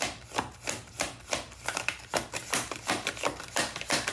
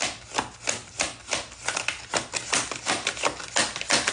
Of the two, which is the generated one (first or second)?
first